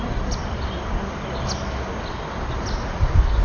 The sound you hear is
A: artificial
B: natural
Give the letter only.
B